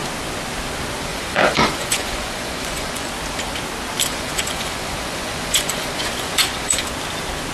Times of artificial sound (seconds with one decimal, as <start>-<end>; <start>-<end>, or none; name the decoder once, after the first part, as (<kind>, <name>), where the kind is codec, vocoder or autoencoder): 1.1-3.1 (vocoder, Vocos); 4.1-6.8